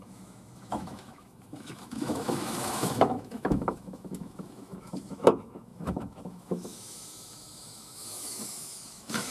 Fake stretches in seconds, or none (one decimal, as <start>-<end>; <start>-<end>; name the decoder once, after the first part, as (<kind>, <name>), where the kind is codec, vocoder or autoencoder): 0.0-9.3 (autoencoder, DAC-VAE)